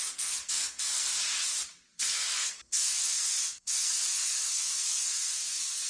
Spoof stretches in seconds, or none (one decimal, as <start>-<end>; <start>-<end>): 0.0-1.1; 1.9-5.9